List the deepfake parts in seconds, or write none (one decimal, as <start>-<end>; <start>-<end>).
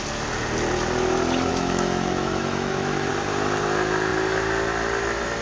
1.5-3.1